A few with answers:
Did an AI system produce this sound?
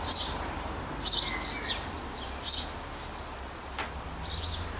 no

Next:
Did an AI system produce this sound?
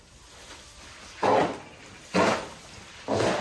no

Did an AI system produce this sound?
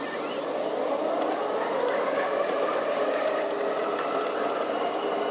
no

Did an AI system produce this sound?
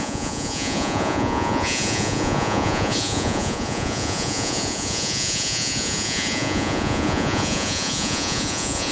yes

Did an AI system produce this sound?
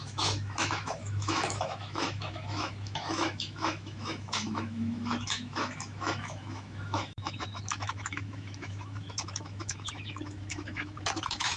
yes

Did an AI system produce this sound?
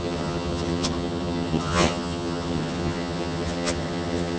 yes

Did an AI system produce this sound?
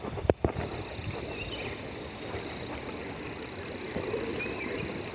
no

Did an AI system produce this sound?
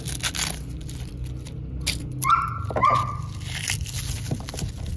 no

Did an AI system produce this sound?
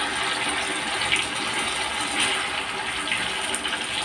no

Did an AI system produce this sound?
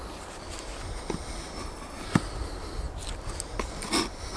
no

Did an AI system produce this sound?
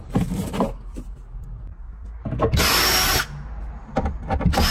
no